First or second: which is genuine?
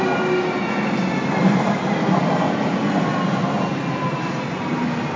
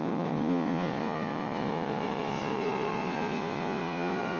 first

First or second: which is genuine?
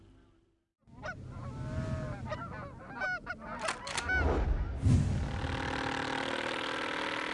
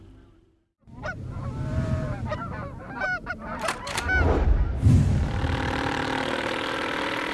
first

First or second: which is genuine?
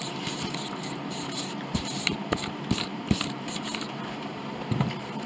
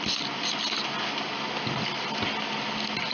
second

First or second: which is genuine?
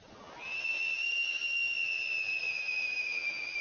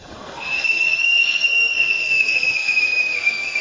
first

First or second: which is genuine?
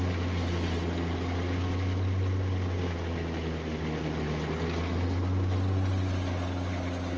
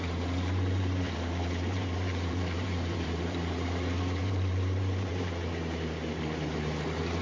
first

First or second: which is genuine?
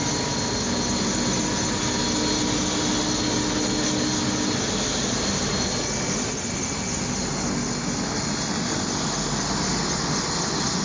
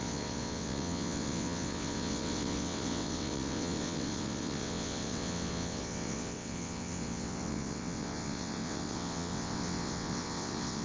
first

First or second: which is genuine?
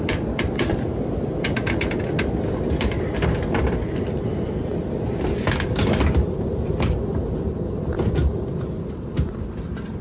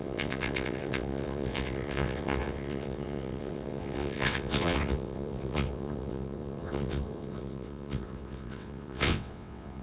first